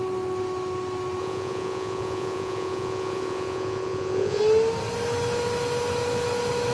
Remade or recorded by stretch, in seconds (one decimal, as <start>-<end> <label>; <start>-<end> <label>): 0.0-1.2 recorded; 1.2-4.4 remade; 4.4-6.7 recorded